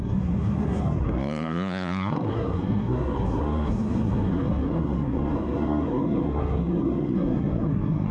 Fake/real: fake